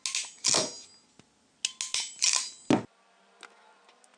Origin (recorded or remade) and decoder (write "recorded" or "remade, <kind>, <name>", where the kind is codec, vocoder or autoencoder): recorded